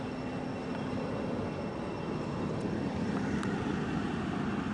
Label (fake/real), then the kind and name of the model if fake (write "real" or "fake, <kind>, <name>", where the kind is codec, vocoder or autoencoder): real